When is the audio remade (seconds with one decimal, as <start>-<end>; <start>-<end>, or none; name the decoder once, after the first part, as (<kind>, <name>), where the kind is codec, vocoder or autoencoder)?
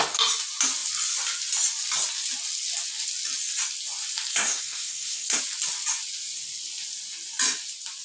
4.3-5.4 (codec, SNAC)